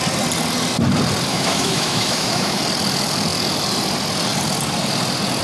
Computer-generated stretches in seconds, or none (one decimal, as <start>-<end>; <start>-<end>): 1.3-2.6

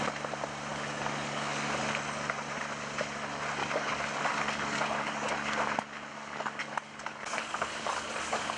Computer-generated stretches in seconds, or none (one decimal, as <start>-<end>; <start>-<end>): 0.7-1.8; 3.6-5.3; 6.1-8.6

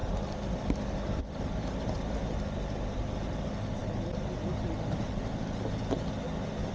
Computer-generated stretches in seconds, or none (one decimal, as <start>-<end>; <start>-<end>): none

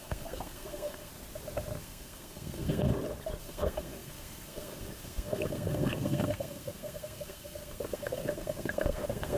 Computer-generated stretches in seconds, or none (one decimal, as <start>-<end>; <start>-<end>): 0.0-1.1; 1.8-2.9; 3.4-9.4

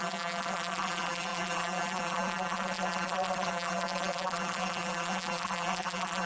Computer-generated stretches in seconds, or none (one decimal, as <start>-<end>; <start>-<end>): 0.0-6.3